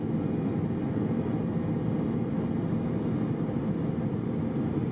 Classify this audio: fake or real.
real